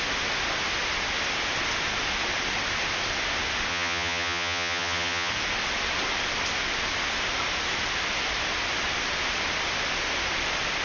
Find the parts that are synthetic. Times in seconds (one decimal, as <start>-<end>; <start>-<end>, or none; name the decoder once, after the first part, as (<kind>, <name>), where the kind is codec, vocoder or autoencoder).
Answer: 3.7-5.3 (vocoder, HiFi-GAN)